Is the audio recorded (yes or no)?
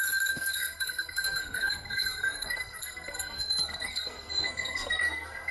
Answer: no